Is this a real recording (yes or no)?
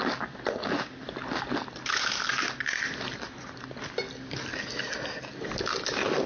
yes